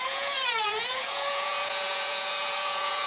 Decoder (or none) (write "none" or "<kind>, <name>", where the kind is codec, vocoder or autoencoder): vocoder, Vocos